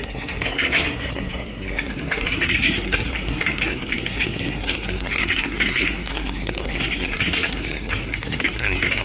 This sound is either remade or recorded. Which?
remade